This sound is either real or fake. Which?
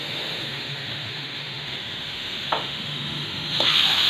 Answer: fake